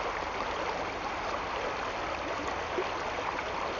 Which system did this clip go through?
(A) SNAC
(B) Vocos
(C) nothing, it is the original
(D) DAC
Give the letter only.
C